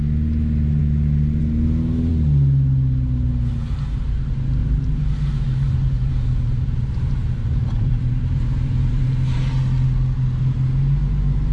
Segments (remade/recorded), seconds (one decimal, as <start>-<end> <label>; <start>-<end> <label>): 0.0-4.6 recorded; 4.6-9.4 remade; 9.4-11.5 recorded